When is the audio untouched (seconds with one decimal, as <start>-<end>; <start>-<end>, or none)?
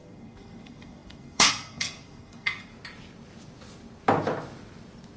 2.7-5.2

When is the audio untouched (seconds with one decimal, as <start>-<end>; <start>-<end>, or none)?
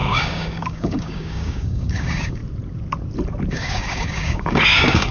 2.4-3.5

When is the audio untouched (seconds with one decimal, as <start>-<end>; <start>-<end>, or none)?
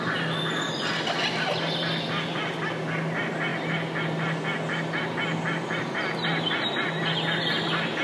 0.0-8.0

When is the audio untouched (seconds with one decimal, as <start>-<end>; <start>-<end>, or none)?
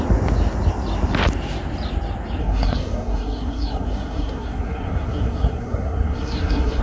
0.0-2.4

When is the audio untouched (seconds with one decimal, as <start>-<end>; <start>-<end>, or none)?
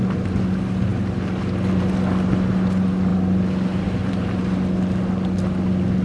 0.0-6.0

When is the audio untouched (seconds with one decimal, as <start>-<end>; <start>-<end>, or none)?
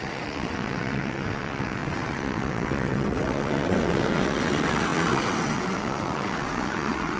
none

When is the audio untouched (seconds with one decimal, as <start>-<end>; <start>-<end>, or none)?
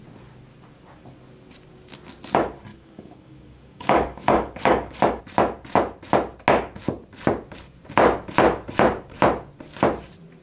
0.0-2.7; 5.2-10.4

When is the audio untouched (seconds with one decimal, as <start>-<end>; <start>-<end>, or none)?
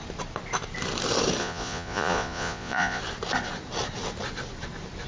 0.0-1.4; 3.0-5.1